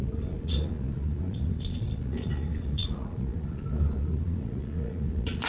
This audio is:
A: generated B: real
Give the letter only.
A